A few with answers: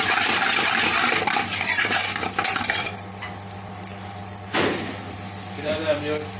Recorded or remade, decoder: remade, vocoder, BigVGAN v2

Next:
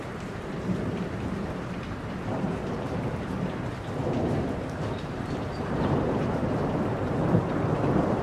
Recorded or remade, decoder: remade, vocoder, BigVGAN v2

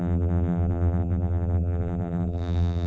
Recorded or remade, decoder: remade, vocoder, BigVGAN v2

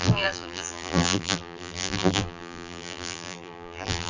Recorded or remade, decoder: remade, vocoder, BigVGAN v2